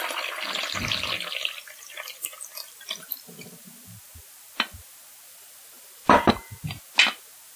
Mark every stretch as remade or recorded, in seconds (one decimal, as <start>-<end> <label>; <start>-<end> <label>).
0.0-5.3 recorded; 5.3-6.3 remade; 6.3-7.6 recorded